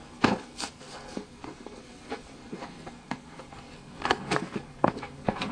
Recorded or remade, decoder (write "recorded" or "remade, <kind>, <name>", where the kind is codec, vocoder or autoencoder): remade, codec, SNAC